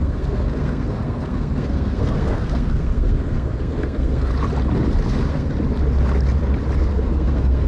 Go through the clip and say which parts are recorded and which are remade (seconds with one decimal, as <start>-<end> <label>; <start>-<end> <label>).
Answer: 0.0-4.3 remade; 4.3-5.1 recorded; 5.1-5.5 remade; 5.5-6.8 recorded; 6.8-7.7 remade